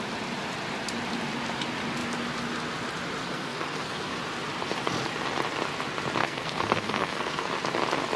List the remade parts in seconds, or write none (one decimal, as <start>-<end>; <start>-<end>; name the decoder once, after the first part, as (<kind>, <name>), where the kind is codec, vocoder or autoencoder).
3.2-4.2 (codec, SNAC); 6.2-7.5